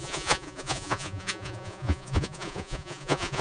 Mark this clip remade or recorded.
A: remade